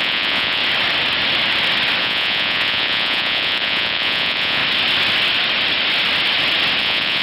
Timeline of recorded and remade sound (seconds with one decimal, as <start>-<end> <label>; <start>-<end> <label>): 0.0-0.6 remade; 0.6-2.0 recorded; 2.0-4.6 remade; 4.6-6.8 recorded; 6.8-7.2 remade